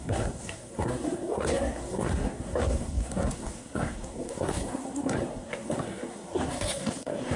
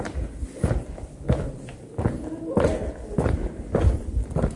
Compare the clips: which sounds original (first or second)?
second